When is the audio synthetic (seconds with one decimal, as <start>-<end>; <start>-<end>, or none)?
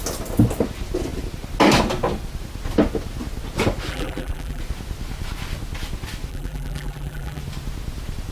3.9-4.6; 6.3-7.4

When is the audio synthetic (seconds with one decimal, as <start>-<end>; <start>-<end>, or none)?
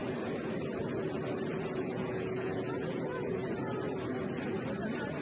1.7-3.4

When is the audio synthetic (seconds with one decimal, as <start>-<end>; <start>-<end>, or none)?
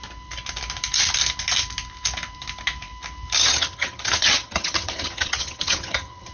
3.4-6.3